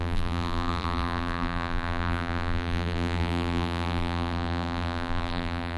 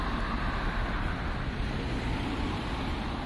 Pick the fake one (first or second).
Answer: first